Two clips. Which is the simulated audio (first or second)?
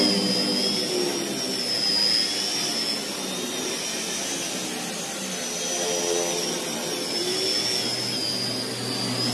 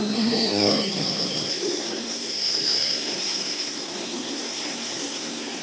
second